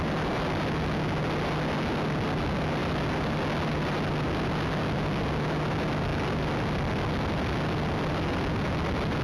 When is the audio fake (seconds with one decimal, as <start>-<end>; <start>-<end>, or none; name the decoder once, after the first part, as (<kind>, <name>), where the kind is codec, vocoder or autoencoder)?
none